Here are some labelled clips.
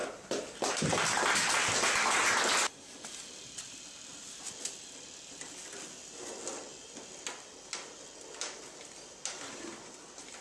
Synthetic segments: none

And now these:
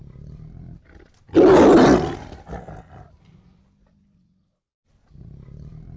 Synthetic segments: none

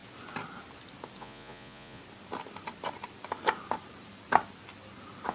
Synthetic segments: 1.2-2.0

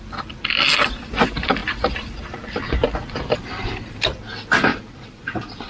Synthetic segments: 2.8-3.8; 4.7-5.7

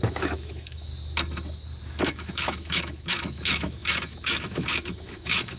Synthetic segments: 0.0-0.9; 2.0-5.6

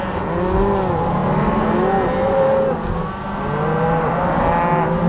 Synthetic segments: none

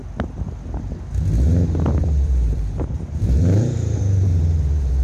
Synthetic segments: 2.0-5.0